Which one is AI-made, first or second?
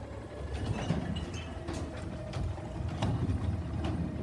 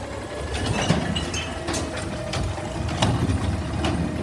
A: first